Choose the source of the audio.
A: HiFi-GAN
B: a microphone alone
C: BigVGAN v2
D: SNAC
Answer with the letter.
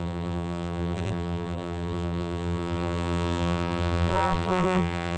C